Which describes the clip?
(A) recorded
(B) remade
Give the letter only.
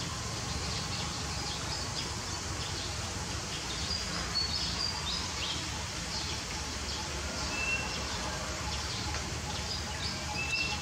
A